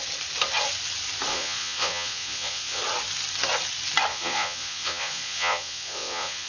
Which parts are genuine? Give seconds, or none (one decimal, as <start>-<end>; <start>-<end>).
0.0-1.3; 2.8-4.1